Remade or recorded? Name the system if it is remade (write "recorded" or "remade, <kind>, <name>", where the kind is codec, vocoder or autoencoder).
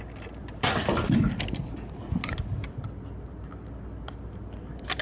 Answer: recorded